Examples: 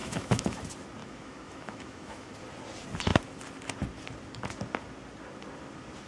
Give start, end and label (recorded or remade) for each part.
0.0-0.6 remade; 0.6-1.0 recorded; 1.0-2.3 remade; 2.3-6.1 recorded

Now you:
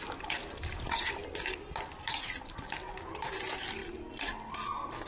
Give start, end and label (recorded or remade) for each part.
0.0-3.8 remade; 3.8-5.1 recorded

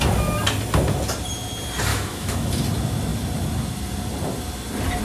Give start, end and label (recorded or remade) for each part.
0.0-1.9 recorded; 1.9-2.5 remade; 2.5-5.0 recorded

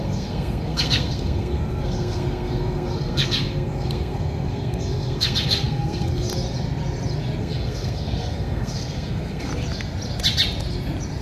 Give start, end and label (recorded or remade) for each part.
0.0-6.3 remade; 6.3-7.4 recorded; 7.4-9.5 remade; 9.5-11.2 recorded

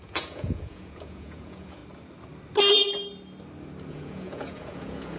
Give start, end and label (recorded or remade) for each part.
0.0-1.8 remade; 1.8-3.9 recorded; 3.9-5.2 remade